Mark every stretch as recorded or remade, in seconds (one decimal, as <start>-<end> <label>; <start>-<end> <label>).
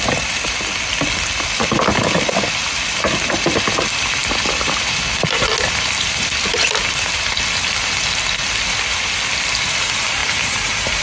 0.0-10.2 recorded; 10.2-11.0 remade